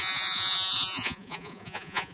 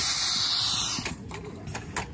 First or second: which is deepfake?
first